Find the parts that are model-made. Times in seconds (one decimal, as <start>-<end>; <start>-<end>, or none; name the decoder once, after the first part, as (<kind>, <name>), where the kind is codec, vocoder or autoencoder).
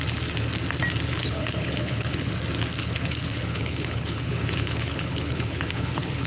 1.2-2.3 (codec, HILCodec); 2.8-6.3